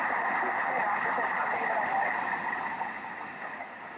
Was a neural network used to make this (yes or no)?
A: no